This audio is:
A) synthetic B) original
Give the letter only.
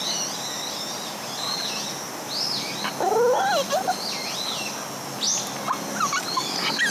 B